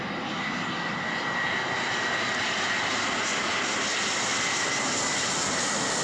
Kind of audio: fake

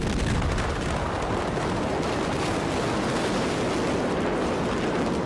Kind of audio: real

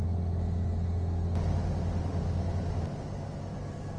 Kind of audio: real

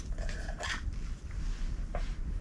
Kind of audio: real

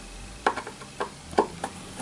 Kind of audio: real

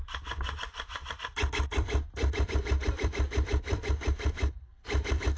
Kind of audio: fake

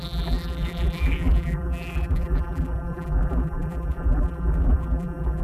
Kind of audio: fake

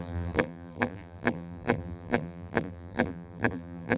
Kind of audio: fake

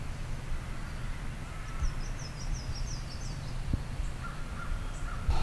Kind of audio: real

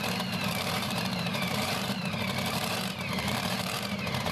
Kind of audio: fake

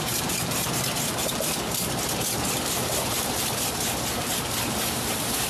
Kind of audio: fake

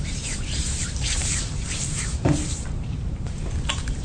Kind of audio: fake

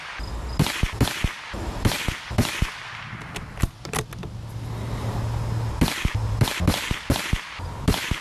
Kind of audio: real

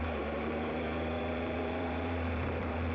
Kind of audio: fake